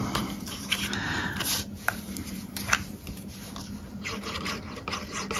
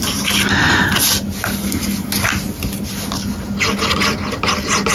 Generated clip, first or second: first